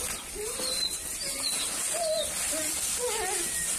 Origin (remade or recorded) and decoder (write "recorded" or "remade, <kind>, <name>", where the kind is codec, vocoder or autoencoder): recorded